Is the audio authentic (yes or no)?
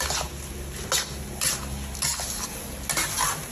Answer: yes